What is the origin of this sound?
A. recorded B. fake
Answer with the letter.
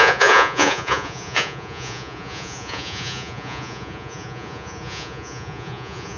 B